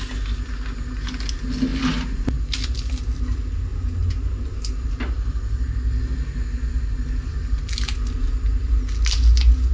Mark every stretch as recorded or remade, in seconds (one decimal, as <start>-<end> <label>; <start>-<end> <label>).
0.0-3.7 recorded; 3.7-4.7 remade; 4.7-9.7 recorded